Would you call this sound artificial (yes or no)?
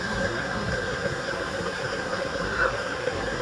yes